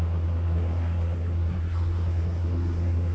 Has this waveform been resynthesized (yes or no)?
yes